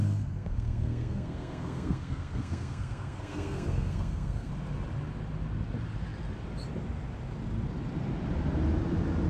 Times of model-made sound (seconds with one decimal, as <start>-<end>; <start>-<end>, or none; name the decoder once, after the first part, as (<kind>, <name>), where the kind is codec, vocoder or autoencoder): 0.0-4.5 (codec, SNAC)